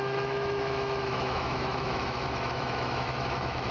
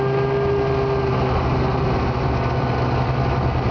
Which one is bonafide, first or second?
second